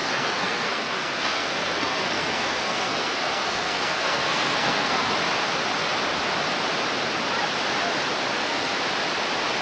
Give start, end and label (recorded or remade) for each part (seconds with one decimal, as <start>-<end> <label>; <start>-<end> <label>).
0.0-5.1 remade; 5.1-8.3 recorded; 8.3-8.8 remade; 8.8-9.6 recorded